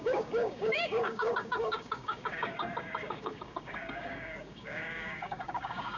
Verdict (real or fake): fake